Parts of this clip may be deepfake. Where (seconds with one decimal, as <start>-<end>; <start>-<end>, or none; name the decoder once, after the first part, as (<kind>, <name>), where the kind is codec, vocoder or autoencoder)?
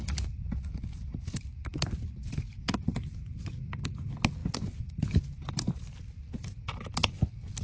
none